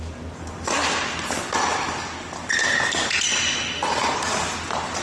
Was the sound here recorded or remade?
recorded